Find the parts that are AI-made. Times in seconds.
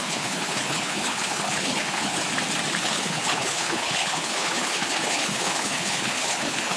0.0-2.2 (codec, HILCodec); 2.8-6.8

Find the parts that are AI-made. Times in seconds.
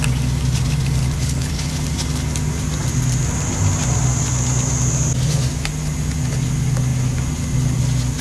1.0-1.7 (codec, HILCodec)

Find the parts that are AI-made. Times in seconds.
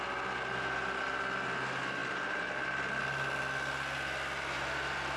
none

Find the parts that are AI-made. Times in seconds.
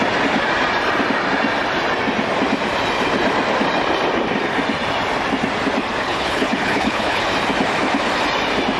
6.0-7.2 (codec, HILCodec)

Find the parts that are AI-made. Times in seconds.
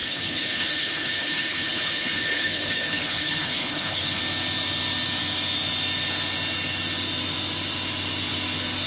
0.0-4.2 (codec, HILCodec)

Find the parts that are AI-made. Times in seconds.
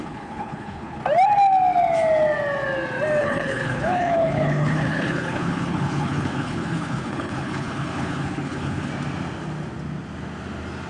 0.0-1.0 (codec, HILCodec); 3.2-8.9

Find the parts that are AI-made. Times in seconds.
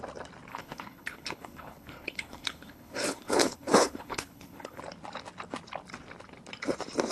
0.5-4.8 (codec, HILCodec)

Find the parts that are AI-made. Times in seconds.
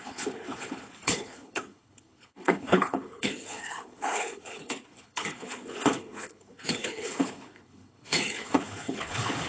0.0-9.5 (codec, HILCodec)